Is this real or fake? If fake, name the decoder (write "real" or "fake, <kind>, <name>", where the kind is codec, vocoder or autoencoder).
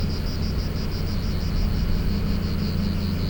real